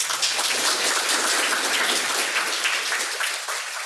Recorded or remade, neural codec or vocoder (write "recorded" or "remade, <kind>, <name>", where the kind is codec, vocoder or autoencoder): recorded